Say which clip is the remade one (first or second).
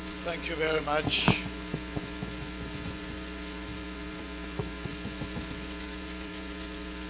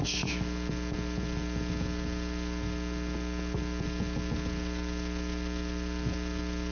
first